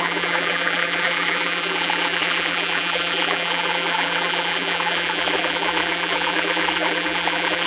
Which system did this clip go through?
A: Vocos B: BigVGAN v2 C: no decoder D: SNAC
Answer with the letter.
B